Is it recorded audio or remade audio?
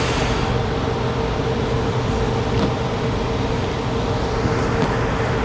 recorded